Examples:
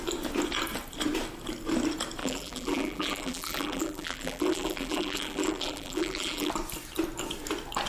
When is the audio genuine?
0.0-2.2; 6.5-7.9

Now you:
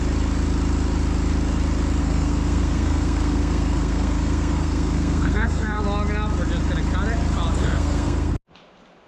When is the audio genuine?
0.0-2.0; 5.8-7.6; 8.3-9.1

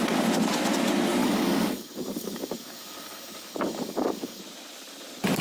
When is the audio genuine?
0.0-1.2; 4.4-5.4

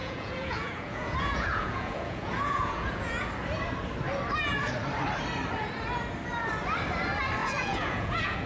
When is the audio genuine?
3.3-7.4

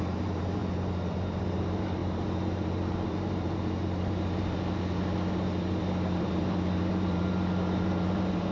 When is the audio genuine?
none

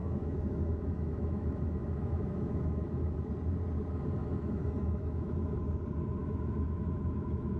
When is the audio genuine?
3.3-4.2; 5.6-6.2

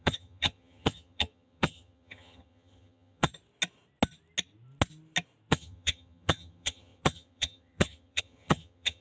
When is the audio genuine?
3.3-5.5